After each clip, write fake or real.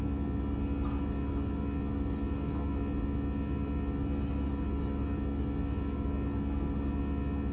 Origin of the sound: real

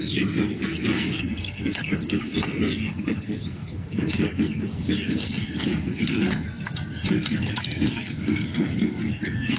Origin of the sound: fake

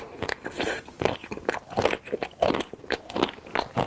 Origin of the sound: real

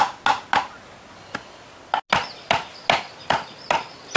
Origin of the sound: real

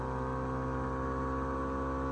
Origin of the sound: real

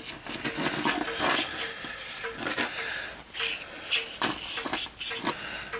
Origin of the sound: real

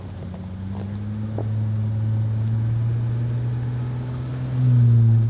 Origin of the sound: real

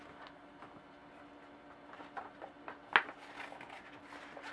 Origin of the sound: real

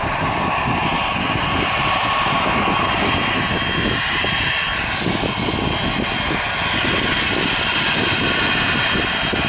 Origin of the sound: real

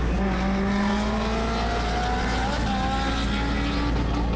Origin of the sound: real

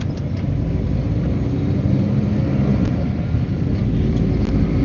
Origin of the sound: real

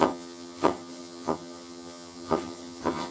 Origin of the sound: fake